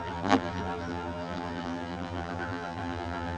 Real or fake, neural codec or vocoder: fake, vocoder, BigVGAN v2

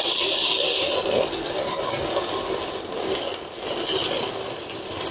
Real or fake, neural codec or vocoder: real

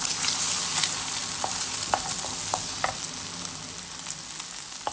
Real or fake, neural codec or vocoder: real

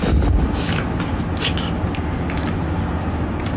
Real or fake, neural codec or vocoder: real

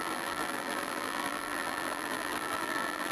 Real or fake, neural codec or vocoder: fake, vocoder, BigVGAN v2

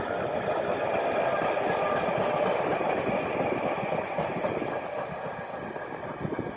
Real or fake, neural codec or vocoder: real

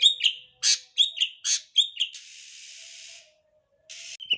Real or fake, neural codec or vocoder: real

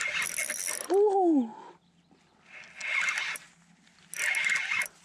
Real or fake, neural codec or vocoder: real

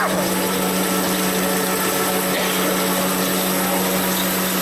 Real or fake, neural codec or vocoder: real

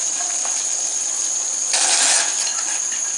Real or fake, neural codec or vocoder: real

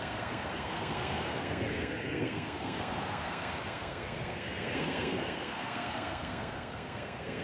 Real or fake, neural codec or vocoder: fake, codec, SNAC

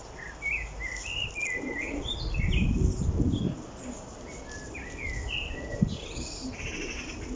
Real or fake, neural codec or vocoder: real